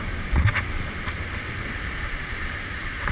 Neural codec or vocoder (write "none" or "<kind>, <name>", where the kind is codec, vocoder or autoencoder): vocoder, BigVGAN v2